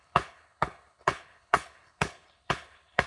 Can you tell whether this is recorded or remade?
remade